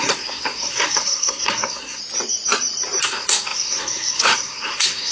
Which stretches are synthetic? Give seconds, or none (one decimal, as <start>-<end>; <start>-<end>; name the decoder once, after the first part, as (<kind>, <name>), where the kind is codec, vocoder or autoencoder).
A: 0.0-2.0 (codec, SNAC); 3.0-5.1